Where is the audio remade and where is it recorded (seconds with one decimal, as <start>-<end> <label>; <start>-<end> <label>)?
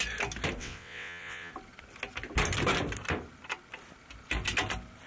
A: 0.0-0.6 recorded; 0.6-1.5 remade; 1.5-5.1 recorded